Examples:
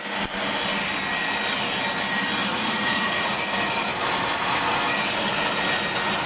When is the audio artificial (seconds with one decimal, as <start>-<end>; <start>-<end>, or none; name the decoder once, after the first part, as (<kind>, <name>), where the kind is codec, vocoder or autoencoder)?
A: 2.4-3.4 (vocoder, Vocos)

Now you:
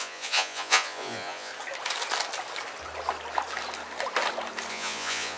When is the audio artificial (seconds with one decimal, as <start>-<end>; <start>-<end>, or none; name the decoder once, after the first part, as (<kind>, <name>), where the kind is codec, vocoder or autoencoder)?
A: 0.0-1.5 (vocoder, Vocos); 4.7-5.4

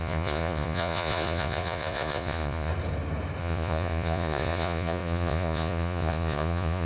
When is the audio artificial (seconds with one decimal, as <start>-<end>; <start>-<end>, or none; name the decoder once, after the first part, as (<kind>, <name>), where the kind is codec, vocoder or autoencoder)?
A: 0.0-2.7 (vocoder, Vocos); 3.4-6.9

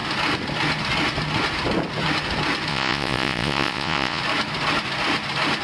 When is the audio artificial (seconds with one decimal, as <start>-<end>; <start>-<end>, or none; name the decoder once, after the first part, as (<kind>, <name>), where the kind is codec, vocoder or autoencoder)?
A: 2.7-4.2 (vocoder, Vocos)

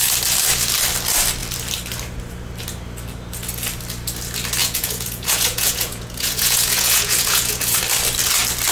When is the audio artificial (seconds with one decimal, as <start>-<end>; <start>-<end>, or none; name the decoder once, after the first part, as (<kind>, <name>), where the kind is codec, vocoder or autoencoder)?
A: 4.6-7.8 (vocoder, Vocos)